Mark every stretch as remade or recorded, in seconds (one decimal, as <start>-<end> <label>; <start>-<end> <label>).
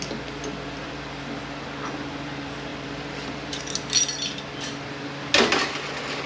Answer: 0.0-0.8 recorded; 0.8-1.4 remade; 1.4-2.7 recorded; 2.7-3.6 remade; 3.6-6.3 recorded